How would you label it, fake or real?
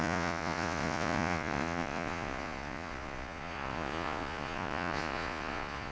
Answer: fake